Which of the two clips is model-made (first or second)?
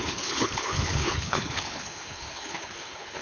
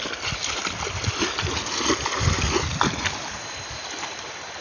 first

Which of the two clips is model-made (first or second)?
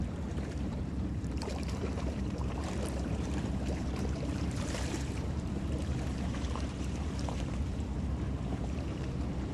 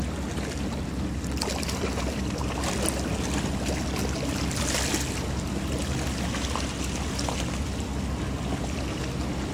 first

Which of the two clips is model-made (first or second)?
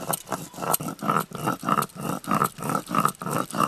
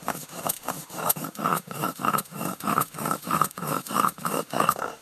second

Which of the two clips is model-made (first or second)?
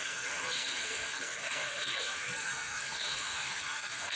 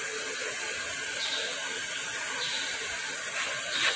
first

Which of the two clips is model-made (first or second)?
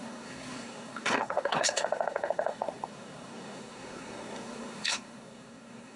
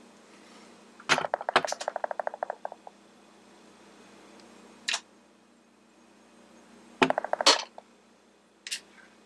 first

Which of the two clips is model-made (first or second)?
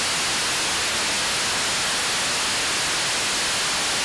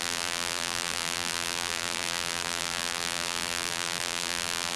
second